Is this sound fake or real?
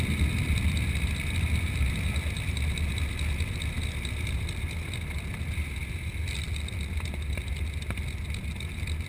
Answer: real